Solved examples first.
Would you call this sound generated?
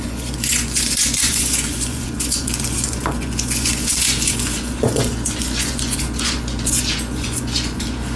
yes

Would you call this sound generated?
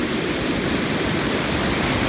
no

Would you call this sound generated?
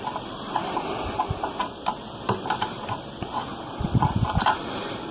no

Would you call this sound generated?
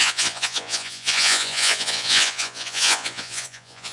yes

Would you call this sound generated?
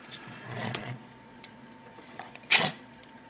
yes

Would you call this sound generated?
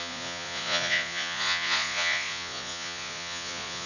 yes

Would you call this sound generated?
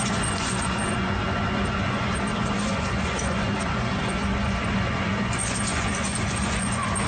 yes